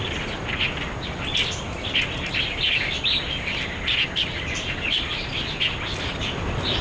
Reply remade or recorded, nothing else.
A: recorded